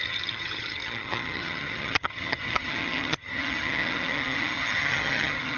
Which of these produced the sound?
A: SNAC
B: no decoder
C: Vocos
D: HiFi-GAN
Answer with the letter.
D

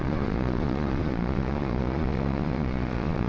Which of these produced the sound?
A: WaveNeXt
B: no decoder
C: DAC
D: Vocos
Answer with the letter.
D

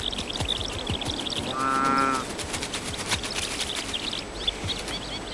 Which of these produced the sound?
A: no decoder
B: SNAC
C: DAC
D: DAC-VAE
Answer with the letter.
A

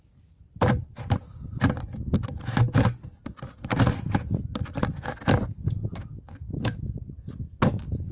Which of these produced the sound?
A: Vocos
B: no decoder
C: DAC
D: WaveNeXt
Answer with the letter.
B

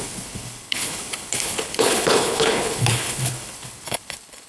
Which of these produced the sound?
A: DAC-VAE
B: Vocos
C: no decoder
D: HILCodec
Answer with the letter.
D